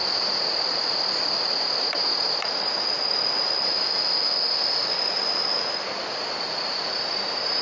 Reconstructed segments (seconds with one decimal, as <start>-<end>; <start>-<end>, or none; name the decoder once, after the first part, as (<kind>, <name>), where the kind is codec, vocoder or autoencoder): none